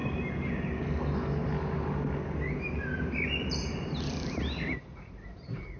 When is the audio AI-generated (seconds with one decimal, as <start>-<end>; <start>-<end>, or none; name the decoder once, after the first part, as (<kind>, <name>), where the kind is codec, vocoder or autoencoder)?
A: 3.5-5.8 (vocoder, BigVGAN v2)